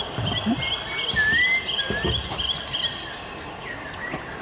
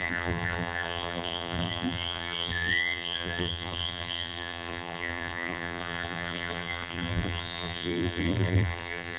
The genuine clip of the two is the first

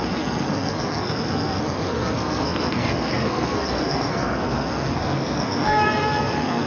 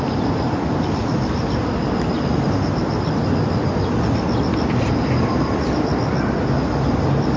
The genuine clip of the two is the second